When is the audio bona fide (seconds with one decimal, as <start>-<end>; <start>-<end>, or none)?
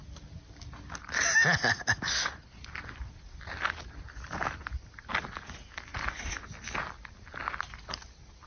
0.0-8.5